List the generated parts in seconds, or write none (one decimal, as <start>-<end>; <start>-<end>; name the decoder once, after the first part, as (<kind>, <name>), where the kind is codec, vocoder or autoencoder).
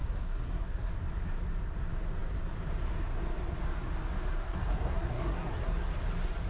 0.0-0.9 (codec, SNAC); 4.4-5.9